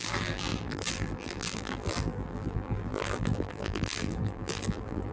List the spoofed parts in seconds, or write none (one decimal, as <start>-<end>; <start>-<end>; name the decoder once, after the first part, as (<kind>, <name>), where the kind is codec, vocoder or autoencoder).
0.0-5.1 (vocoder, BigVGAN v2)